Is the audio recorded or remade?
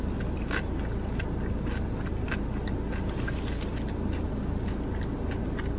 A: recorded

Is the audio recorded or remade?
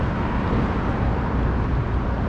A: recorded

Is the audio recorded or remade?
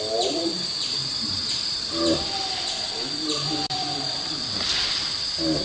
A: remade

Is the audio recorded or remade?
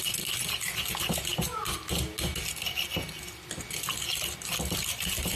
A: recorded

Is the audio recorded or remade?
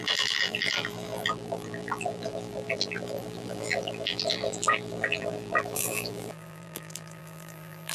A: remade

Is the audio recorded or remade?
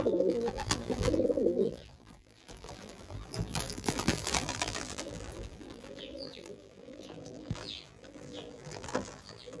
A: remade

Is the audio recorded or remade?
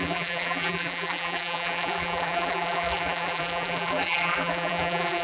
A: remade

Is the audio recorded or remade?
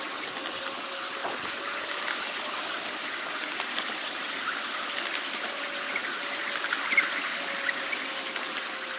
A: recorded